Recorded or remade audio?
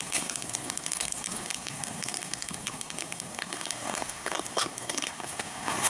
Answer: remade